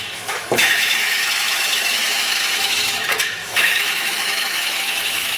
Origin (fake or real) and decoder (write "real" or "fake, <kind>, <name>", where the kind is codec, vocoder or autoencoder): fake, autoencoder, DAC-VAE